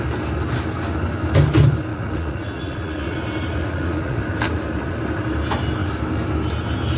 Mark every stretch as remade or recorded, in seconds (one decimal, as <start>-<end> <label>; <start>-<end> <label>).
0.0-1.9 recorded; 1.9-3.2 remade; 3.2-3.6 recorded; 3.6-4.2 remade; 4.2-7.0 recorded